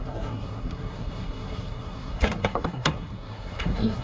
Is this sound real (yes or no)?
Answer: no